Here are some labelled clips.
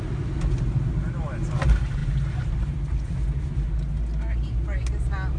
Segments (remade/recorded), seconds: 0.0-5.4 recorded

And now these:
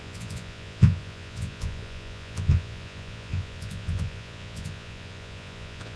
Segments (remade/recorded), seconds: 0.0-6.0 remade

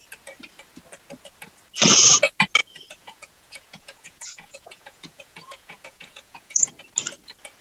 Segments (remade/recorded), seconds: 0.0-2.6 recorded; 2.6-6.7 remade; 6.7-7.6 recorded

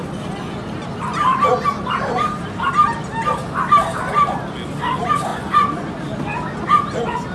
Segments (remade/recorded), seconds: 0.0-5.3 recorded; 5.3-5.9 remade; 5.9-7.3 recorded